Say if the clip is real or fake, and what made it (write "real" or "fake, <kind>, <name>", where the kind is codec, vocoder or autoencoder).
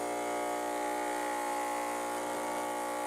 real